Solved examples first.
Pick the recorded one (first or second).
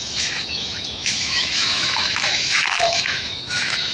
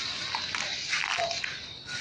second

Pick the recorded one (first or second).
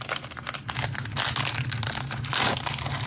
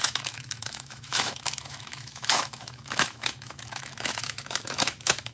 first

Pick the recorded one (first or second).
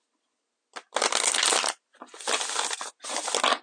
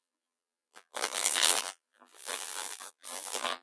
first